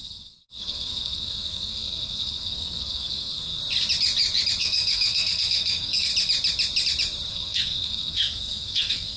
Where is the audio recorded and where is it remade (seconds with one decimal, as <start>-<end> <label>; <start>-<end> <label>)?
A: 0.0-3.6 remade; 3.6-4.6 recorded; 4.6-6.1 remade; 6.1-7.3 recorded; 7.3-9.2 remade